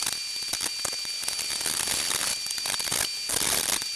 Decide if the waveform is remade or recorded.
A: recorded